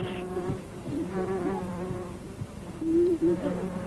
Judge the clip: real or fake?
fake